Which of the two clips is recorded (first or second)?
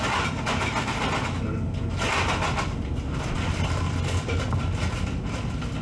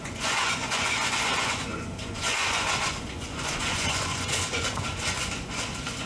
first